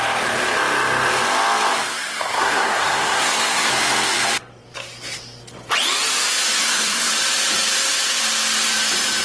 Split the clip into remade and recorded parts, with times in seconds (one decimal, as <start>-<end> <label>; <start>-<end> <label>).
0.0-1.9 recorded; 1.9-3.7 remade; 3.7-6.6 recorded; 6.6-7.1 remade; 7.1-9.2 recorded